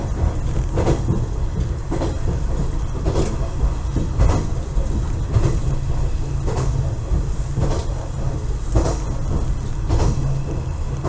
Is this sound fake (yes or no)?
no